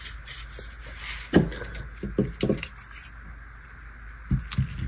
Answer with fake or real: real